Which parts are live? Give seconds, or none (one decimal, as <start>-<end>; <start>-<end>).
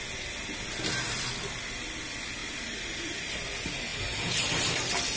0.0-5.2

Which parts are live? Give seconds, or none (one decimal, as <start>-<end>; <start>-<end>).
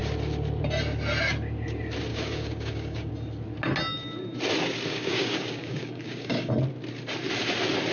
0.0-2.1; 3.1-4.9; 6.5-7.9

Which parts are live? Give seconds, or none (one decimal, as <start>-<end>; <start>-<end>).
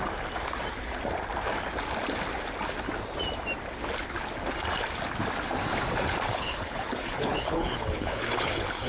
0.0-6.3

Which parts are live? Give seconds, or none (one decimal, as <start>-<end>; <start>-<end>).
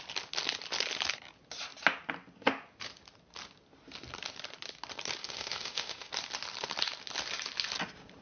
0.0-5.2; 6.1-8.2